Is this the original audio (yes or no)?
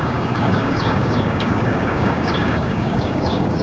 no